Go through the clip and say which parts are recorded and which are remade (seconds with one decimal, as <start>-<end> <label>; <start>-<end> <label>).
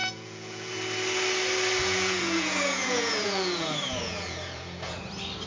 0.0-0.7 remade; 0.7-1.8 recorded; 1.8-5.1 remade; 5.1-5.5 recorded